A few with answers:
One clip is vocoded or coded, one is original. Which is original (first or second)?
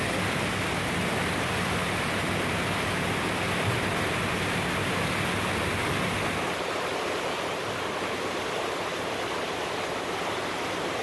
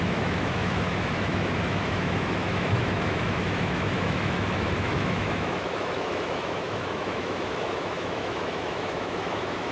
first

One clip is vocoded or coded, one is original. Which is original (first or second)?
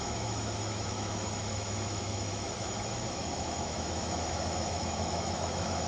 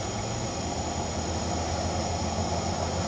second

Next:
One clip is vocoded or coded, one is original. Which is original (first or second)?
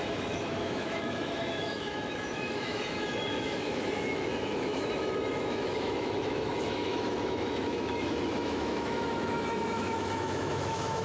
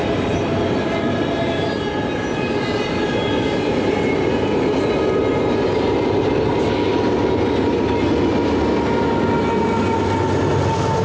second